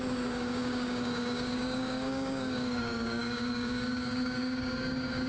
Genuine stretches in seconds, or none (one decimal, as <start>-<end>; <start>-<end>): none